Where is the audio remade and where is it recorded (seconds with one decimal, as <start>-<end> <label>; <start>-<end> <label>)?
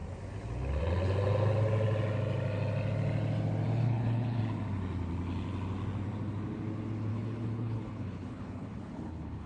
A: 0.0-3.8 recorded; 3.8-4.4 remade; 4.4-7.1 recorded; 7.1-9.5 remade